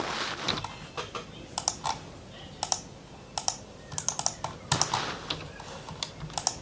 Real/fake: real